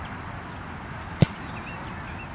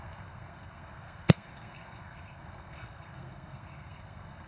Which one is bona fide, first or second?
first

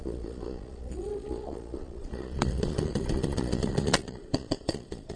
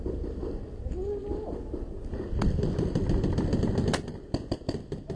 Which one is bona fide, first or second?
second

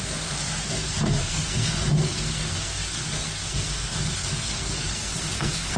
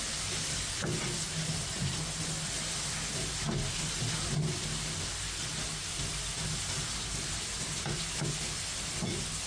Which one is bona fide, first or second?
second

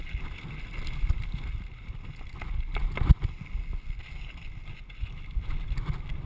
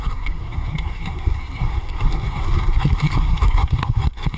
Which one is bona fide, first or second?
first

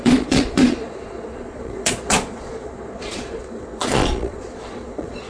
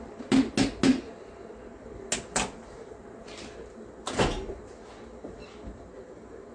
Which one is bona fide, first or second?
second